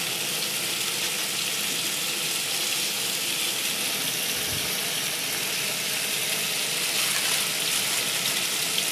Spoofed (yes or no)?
no